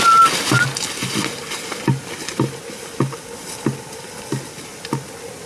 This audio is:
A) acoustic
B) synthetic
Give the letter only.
A